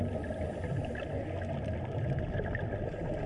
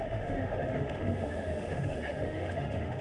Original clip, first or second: first